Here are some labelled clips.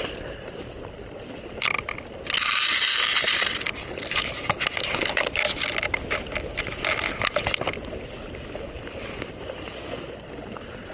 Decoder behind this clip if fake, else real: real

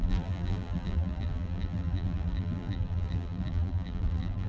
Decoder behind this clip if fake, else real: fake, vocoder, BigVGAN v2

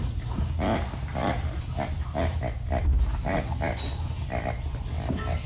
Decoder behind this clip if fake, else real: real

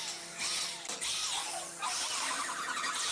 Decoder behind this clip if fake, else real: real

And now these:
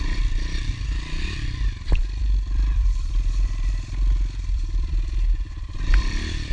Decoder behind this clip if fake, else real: fake, vocoder, BigVGAN v2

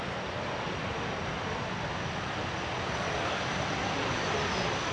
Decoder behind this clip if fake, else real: real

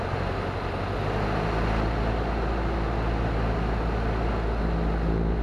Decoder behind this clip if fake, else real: real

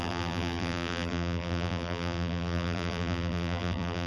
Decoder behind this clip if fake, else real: fake, vocoder, BigVGAN v2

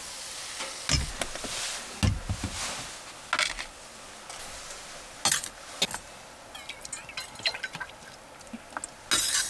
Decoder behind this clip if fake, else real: real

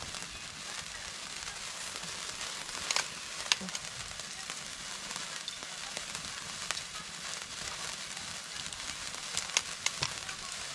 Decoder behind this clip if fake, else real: real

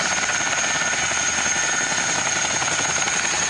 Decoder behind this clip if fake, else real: real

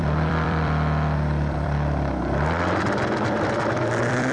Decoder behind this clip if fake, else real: fake, vocoder, BigVGAN v2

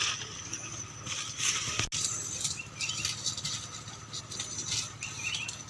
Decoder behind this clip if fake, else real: real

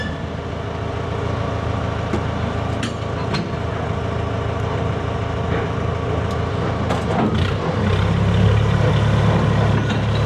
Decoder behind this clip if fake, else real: real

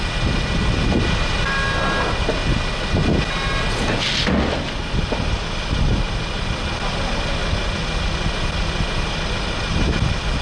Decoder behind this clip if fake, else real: real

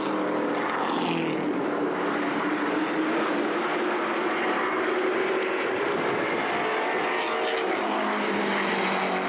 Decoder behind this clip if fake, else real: real